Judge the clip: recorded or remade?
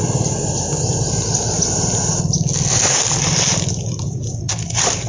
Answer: recorded